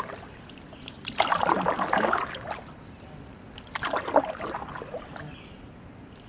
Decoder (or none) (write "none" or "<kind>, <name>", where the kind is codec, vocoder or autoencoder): none